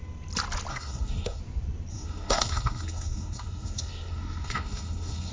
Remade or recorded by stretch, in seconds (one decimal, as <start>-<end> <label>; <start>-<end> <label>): 0.0-0.7 recorded; 0.7-1.4 remade; 1.4-1.9 recorded; 1.9-5.3 remade